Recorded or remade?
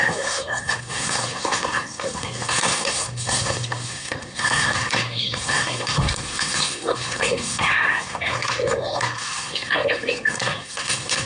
remade